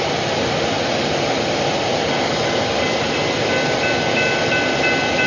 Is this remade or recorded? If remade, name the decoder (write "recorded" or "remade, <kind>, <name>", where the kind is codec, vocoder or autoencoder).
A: recorded